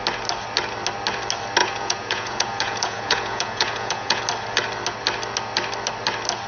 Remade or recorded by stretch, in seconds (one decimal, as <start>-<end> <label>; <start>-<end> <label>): 0.0-1.6 recorded; 1.6-4.2 remade; 4.2-6.5 recorded